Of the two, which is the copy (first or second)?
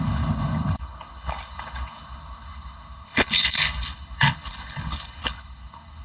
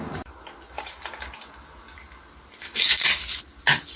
first